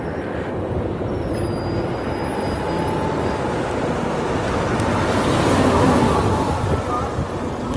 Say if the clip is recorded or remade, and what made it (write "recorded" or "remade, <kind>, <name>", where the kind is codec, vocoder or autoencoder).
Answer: recorded